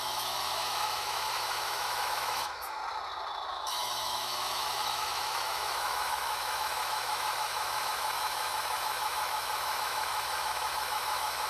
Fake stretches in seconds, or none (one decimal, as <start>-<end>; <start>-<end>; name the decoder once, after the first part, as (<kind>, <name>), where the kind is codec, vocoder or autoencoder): 0.0-2.8 (autoencoder, DAC-VAE); 3.5-11.5